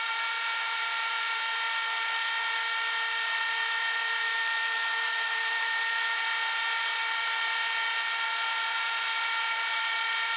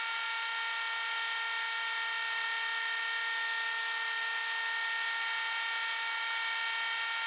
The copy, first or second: first